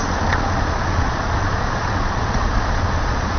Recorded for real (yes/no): no